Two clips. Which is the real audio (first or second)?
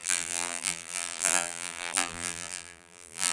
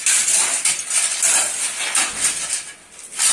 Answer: second